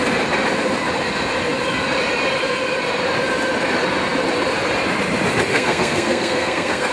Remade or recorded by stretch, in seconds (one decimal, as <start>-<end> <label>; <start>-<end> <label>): 0.0-5.5 recorded; 5.5-6.9 remade